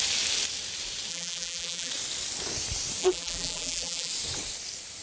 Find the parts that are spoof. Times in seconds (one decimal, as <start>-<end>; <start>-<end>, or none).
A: 1.1-1.9; 3.0-4.1

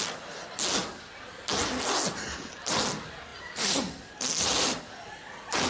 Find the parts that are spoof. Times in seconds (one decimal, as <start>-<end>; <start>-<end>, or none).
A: 3.3-4.8

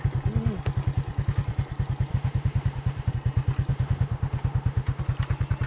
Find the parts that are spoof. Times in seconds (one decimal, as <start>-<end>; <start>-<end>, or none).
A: 2.1-3.1; 3.7-5.0